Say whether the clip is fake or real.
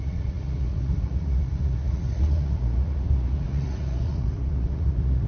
fake